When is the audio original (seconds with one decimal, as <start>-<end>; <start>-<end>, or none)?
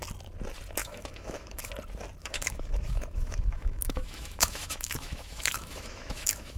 0.0-0.8; 1.7-2.2